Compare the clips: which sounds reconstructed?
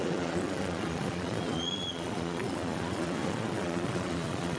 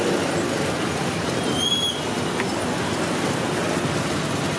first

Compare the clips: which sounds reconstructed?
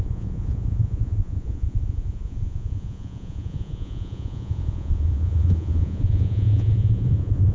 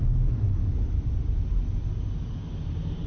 first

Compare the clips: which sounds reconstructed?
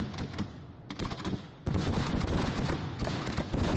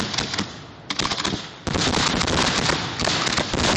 first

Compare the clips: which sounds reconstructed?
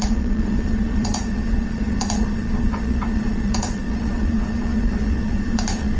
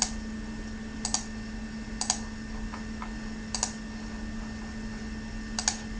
first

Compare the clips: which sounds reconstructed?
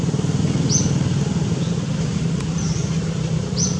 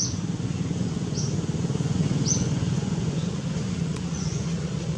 second